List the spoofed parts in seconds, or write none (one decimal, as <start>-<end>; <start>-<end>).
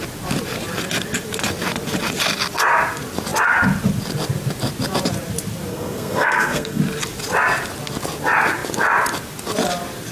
5.7-6.8